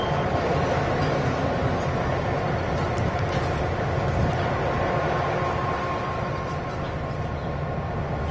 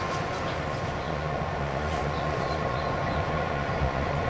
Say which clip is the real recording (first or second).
first